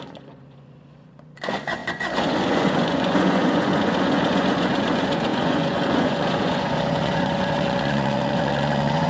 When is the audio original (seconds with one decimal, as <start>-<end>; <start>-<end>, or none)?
none